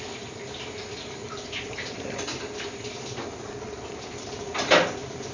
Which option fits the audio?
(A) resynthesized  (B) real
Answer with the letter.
B